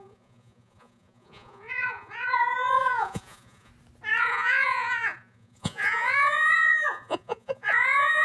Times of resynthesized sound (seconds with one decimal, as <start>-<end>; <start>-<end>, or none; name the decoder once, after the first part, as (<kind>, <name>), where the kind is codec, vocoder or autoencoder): 0.0-3.7 (vocoder, Vocos); 4.2-8.2